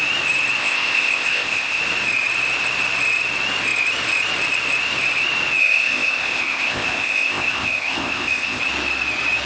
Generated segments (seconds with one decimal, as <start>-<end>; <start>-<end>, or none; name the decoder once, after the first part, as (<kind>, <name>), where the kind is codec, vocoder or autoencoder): 0.6-1.8 (codec, ZipCodec); 5.6-8.6

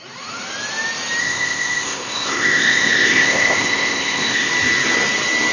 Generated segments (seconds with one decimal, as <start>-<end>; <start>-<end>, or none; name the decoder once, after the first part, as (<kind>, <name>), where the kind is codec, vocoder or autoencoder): 1.2-4.5 (codec, ZipCodec)